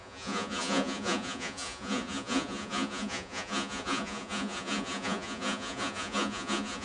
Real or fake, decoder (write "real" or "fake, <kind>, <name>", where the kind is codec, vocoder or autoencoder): fake, vocoder, Vocos